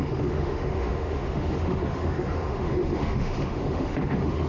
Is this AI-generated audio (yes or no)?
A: yes